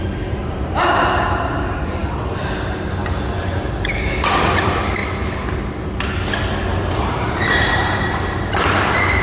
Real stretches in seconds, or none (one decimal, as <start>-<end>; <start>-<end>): 2.0-4.5; 5.0-6.8